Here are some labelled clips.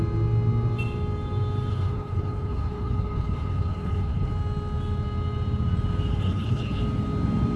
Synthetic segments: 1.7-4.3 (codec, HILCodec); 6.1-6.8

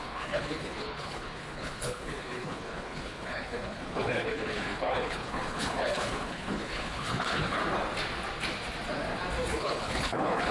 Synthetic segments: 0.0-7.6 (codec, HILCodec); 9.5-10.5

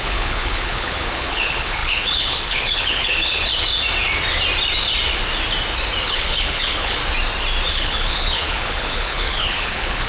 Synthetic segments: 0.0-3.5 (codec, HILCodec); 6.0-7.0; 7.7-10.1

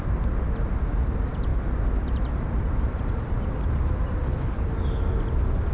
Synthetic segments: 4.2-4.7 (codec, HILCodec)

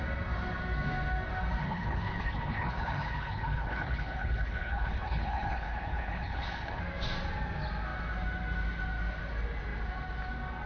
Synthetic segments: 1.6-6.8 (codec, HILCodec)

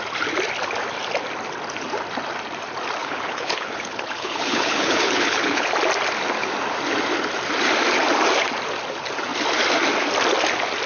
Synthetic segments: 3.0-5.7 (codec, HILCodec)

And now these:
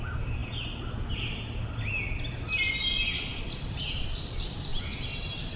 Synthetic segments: none

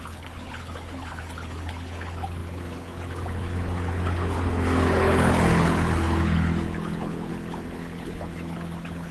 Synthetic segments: 0.0-9.1 (codec, HILCodec)